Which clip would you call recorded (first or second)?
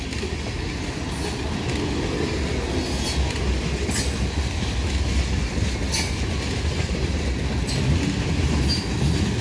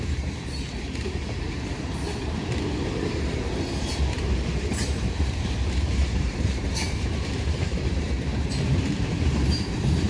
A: first